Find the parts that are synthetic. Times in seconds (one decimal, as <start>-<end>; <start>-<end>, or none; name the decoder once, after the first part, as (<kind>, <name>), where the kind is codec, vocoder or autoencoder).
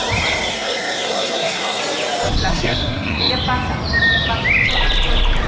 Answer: 0.5-1.8 (codec, SNAC); 2.5-3.3